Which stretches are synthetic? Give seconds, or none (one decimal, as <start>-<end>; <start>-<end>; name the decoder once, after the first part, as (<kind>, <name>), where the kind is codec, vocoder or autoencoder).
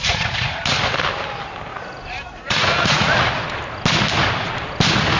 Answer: 0.0-0.6 (vocoder, Vocos); 1.7-3.3